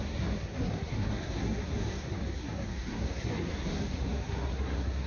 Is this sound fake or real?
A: fake